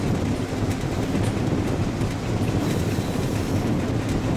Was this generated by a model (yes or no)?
no